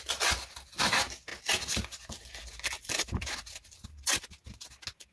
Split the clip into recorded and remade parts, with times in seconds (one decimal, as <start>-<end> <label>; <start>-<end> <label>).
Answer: 0.0-5.1 recorded